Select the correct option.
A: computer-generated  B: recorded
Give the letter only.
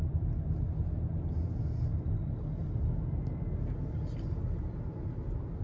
B